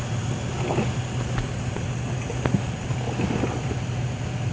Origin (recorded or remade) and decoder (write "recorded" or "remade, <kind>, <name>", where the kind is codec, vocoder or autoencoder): recorded